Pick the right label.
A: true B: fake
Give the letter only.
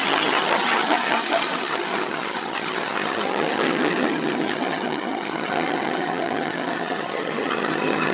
B